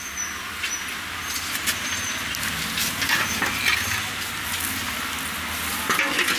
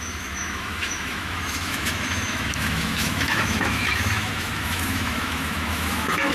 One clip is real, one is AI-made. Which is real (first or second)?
first